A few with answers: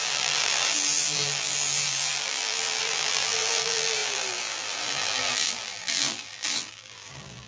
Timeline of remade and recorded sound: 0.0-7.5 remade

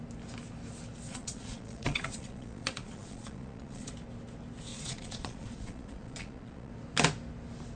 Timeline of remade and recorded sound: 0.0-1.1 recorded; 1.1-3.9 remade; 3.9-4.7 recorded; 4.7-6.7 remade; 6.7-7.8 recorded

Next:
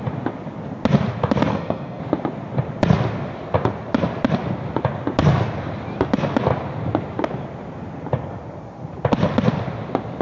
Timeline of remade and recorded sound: 0.0-1.5 recorded; 1.5-2.0 remade; 2.0-10.2 recorded

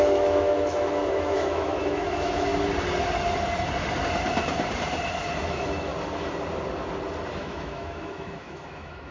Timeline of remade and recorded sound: 0.0-2.5 remade; 2.5-5.4 recorded; 5.4-5.9 remade; 5.9-7.4 recorded; 7.4-9.1 remade

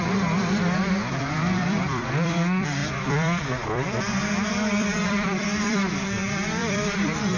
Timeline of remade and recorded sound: 0.0-7.4 remade

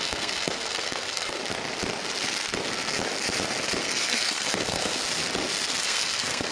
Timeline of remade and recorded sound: 0.0-1.4 remade; 1.4-3.8 recorded; 3.8-5.0 remade; 5.0-5.8 recorded; 5.8-6.5 remade

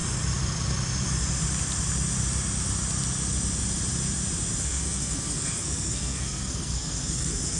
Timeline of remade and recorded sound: 0.0-4.6 recorded; 4.6-7.6 remade